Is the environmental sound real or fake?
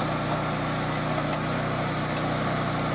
real